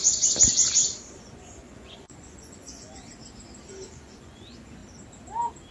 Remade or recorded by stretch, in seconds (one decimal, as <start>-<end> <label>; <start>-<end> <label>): 0.0-1.1 recorded; 1.1-3.0 remade; 3.0-3.9 recorded; 3.9-4.8 remade; 4.8-5.7 recorded